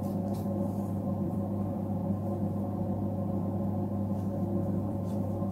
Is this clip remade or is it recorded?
remade